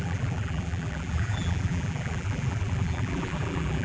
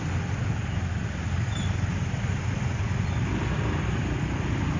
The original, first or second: second